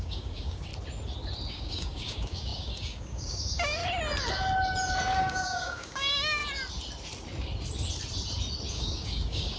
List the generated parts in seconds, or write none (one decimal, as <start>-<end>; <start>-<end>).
0.0-0.7; 1.5-3.8; 5.0-6.4; 8.7-9.6